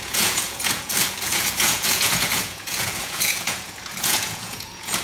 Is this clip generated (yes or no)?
yes